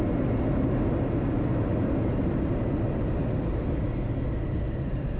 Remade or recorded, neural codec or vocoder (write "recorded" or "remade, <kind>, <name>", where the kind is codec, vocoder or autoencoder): recorded